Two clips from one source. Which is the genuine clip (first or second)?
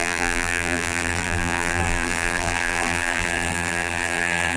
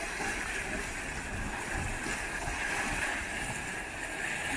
second